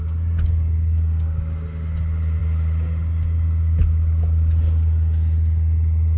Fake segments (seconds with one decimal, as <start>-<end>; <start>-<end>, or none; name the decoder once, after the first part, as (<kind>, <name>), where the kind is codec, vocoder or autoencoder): none